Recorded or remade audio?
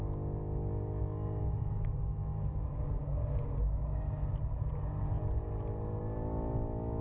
recorded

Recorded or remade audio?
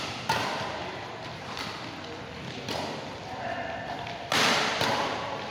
remade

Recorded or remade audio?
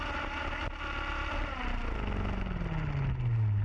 recorded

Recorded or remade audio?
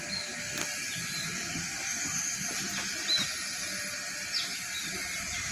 recorded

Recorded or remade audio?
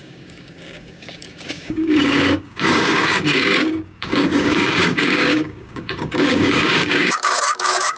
remade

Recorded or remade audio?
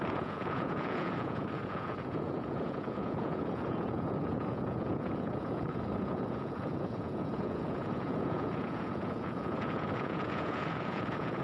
remade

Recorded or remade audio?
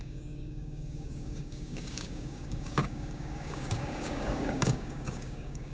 remade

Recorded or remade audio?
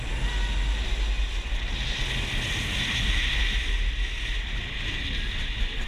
recorded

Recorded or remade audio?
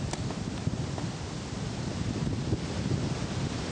recorded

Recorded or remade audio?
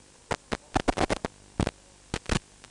recorded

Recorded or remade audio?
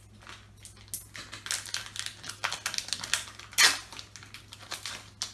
recorded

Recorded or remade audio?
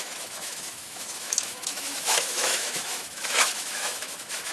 remade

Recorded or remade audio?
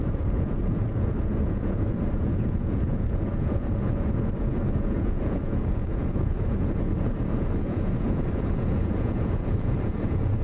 remade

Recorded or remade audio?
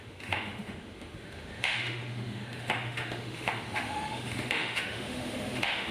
remade